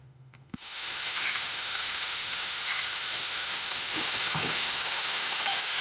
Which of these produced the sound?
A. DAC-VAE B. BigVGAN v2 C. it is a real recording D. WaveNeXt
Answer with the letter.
A